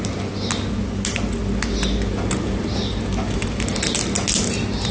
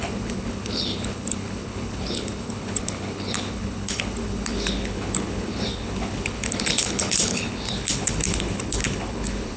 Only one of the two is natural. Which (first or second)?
first